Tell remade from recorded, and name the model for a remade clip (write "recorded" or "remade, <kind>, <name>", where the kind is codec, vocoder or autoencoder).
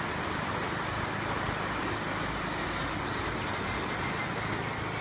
recorded